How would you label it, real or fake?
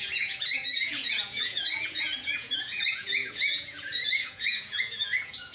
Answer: fake